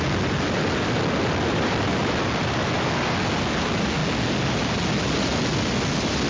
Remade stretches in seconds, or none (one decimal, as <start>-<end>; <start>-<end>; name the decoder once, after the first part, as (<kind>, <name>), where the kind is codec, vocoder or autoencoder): none